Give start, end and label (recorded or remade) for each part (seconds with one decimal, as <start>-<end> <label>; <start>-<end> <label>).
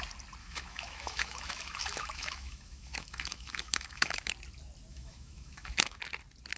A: 0.0-0.4 recorded; 0.4-4.3 remade; 4.3-4.9 recorded; 4.9-6.0 remade; 6.0-6.6 recorded